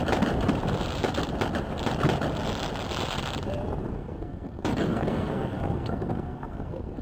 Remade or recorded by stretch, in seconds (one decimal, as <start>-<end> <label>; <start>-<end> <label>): 0.0-3.8 recorded; 3.8-7.0 remade